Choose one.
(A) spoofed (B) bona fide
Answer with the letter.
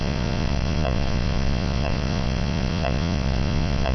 A